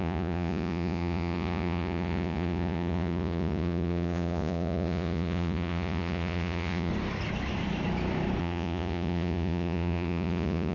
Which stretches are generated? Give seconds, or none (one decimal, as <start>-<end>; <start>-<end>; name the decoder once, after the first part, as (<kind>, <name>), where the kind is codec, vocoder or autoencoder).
0.0-6.9 (vocoder, Vocos); 8.4-10.7